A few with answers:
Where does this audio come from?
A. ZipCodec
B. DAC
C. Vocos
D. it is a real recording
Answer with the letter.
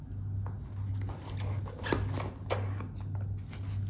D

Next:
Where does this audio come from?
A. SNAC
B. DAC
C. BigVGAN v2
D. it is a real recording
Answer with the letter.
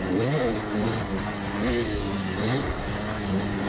D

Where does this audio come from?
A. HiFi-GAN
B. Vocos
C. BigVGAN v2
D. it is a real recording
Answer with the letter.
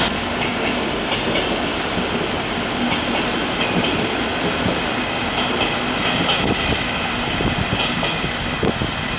D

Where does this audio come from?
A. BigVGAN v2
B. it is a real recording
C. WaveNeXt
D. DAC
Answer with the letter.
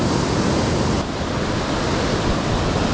B